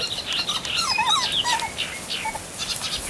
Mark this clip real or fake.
real